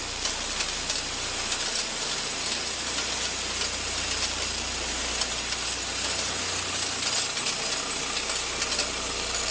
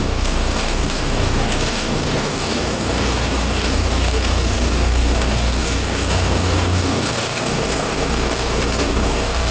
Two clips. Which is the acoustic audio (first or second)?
first